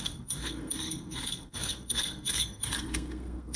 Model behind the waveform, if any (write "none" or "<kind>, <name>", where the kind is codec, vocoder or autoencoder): codec, SNAC